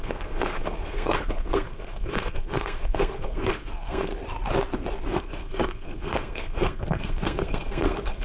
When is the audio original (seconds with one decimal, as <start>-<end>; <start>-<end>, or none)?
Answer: 4.1-5.2